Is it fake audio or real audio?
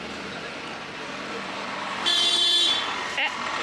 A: real